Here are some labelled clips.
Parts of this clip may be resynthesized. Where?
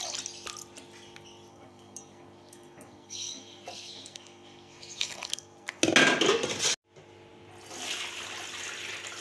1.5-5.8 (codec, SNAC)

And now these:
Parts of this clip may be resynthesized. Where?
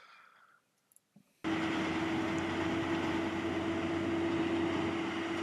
none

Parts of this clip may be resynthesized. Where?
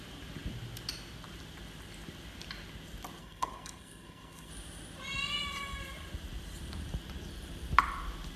3.2-4.5 (codec, SNAC)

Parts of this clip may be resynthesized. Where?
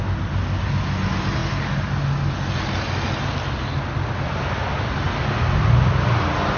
none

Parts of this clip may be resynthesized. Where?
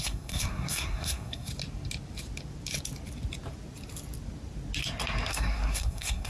0.0-1.5 (codec, SNAC); 5.3-6.3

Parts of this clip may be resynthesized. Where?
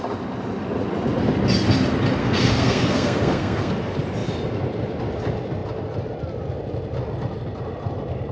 2.2-3.7 (codec, SNAC)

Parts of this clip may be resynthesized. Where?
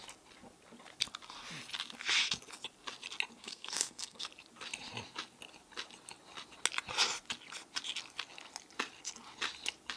3.4-4.3 (codec, SNAC)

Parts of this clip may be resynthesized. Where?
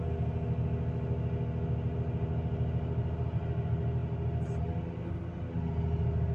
none